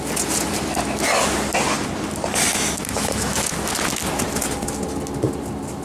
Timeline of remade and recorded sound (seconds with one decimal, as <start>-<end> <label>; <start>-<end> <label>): 0.0-2.9 recorded; 2.9-3.5 remade; 3.5-5.8 recorded